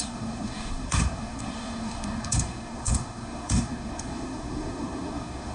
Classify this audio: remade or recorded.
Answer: remade